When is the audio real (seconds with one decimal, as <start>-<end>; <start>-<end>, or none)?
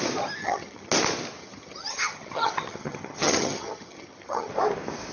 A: 0.0-0.4; 0.9-1.4; 4.5-5.1